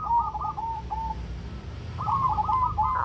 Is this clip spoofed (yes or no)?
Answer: no